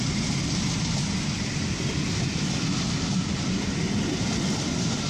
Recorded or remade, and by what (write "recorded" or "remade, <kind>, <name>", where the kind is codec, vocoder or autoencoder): recorded